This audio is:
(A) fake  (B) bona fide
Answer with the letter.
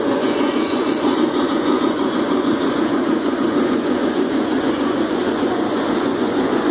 A